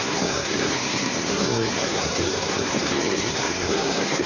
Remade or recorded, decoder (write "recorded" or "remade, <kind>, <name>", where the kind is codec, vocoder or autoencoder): remade, codec, SNAC